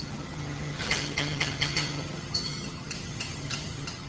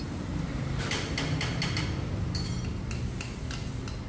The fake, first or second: first